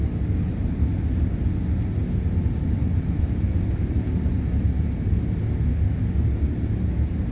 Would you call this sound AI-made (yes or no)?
no